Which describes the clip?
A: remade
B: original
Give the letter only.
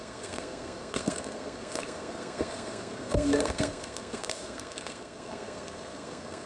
A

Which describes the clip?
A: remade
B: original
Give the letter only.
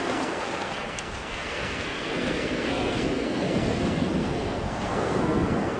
A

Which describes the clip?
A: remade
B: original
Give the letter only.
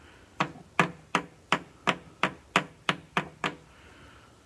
B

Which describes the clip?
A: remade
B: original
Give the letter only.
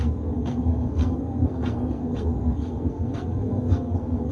A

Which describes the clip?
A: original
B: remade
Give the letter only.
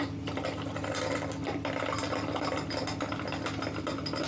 A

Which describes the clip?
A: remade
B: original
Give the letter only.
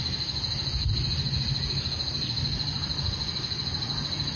B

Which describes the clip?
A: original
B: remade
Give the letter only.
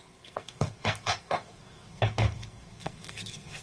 B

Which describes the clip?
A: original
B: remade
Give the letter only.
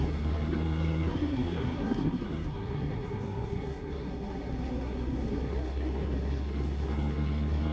B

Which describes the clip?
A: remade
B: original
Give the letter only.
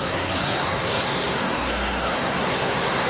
A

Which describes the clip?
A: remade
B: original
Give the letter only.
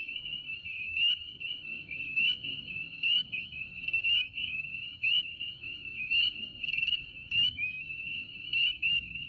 A